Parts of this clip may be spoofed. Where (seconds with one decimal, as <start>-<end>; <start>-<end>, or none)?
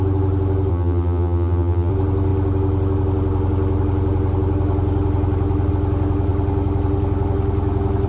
0.7-1.9